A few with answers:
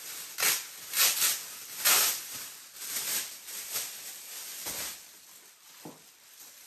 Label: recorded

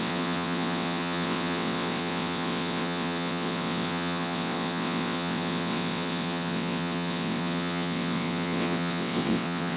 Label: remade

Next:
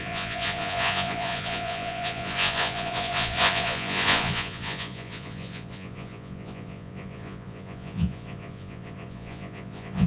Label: remade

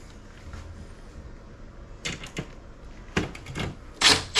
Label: recorded